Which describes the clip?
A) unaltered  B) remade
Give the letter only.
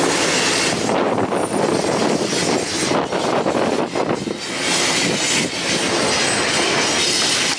A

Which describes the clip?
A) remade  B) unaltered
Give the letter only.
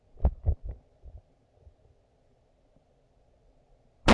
B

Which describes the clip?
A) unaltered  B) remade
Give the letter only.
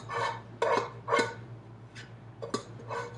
A